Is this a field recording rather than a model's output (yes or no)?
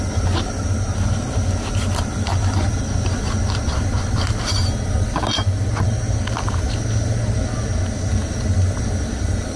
yes